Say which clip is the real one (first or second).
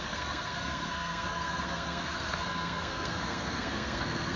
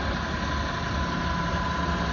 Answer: second